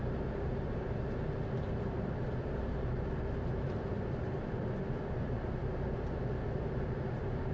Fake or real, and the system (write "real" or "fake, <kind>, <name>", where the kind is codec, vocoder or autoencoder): fake, vocoder, BigVGAN v2